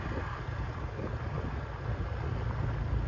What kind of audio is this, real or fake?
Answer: real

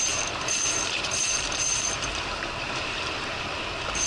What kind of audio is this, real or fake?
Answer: fake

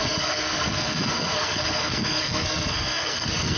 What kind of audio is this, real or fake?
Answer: fake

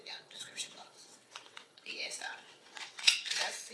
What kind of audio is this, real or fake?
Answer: fake